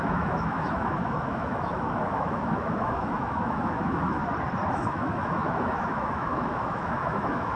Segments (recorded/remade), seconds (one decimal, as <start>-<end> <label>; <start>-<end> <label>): 0.0-4.2 remade; 4.2-4.7 recorded; 4.7-7.6 remade